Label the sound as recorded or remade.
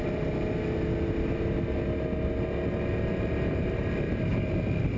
recorded